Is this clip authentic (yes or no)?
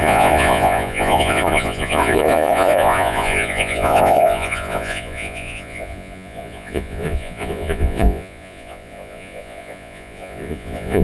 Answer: no